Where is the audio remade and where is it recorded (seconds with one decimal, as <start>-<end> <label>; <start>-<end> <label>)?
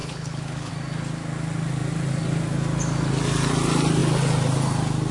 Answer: 0.0-0.7 remade; 0.7-5.1 recorded